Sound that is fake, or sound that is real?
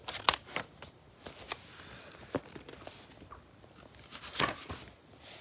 real